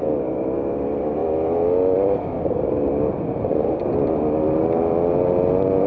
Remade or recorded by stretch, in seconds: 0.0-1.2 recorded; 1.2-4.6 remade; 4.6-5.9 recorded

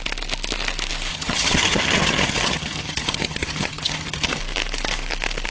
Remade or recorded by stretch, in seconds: 0.0-1.1 recorded; 1.1-4.4 remade; 4.4-5.5 recorded

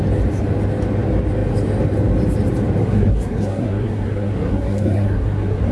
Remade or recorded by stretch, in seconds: 0.0-2.8 recorded; 2.8-5.7 remade

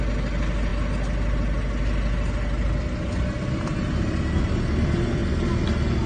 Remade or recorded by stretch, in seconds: 0.0-6.1 recorded

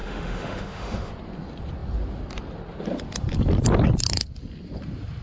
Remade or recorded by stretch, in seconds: 0.0-1.1 remade; 1.1-5.2 recorded

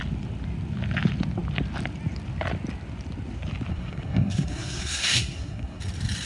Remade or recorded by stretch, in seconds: 0.0-3.7 recorded; 3.7-5.8 remade; 5.8-6.3 recorded